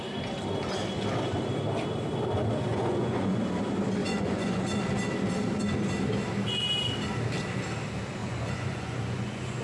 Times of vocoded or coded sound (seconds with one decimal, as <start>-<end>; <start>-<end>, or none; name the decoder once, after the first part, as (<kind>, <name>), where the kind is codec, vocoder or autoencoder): 2.7-3.4 (vocoder, Vocos); 4.0-4.6; 8.2-9.6